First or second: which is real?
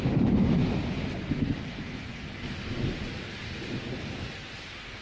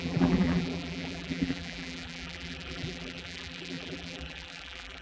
first